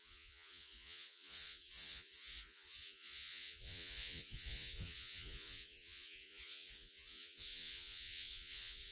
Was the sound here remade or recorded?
remade